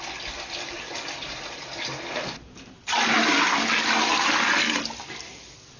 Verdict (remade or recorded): recorded